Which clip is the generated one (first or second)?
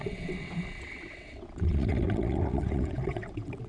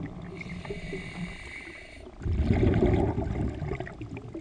first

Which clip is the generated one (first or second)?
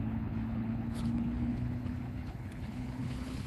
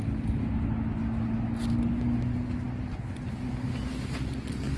first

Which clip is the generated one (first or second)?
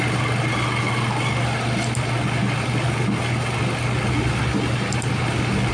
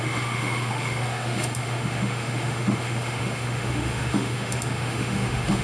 second